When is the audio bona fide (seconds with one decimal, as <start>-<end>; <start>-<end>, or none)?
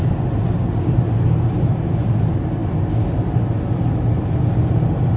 0.0-5.2